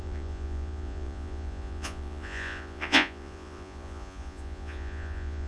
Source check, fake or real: fake